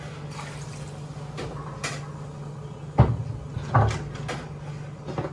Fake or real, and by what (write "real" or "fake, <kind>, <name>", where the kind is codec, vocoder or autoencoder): real